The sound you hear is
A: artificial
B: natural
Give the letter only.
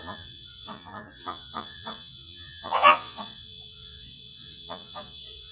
A